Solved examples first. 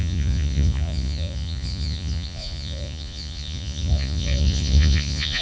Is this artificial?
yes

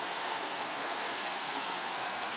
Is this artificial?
yes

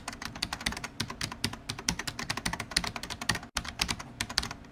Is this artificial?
no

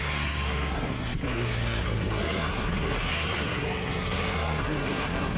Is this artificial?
yes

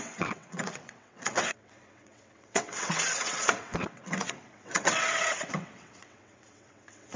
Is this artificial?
yes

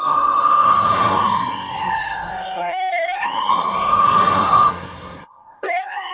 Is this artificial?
yes